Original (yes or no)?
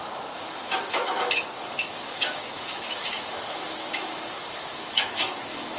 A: no